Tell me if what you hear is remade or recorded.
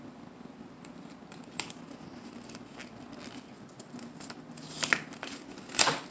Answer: recorded